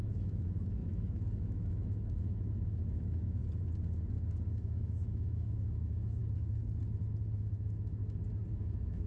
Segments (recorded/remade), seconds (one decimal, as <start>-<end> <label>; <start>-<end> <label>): 0.0-3.4 remade; 3.4-4.6 recorded; 4.6-6.2 remade; 6.2-7.4 recorded; 7.4-8.0 remade; 8.0-8.5 recorded; 8.5-9.1 remade

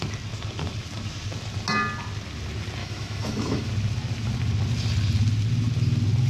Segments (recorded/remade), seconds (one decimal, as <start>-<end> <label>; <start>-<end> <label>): 0.0-2.8 recorded; 2.8-3.7 remade; 3.7-6.3 recorded

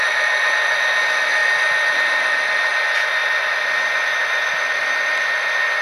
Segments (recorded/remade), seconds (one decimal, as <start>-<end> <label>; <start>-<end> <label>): 0.0-5.8 recorded

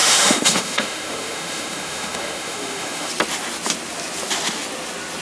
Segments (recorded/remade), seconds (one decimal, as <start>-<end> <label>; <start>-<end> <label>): 0.0-3.1 remade; 3.1-5.2 recorded

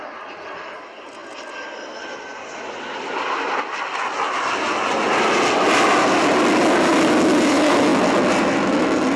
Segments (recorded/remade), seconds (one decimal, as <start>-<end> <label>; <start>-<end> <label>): 0.0-9.2 recorded

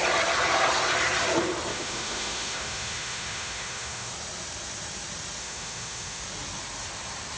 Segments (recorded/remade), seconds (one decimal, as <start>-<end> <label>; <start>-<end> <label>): 0.0-1.7 recorded; 1.7-4.1 remade; 4.1-5.4 recorded; 5.4-6.2 remade; 6.2-7.4 recorded